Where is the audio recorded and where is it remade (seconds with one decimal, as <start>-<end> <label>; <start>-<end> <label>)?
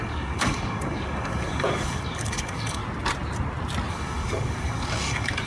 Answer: 0.0-2.8 remade; 2.8-3.9 recorded; 3.9-5.5 remade